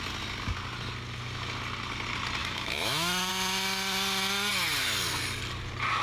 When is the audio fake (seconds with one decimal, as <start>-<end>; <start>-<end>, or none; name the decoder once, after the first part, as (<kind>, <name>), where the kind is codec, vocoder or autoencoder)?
2.4-3.3 (autoencoder, DAC-VAE)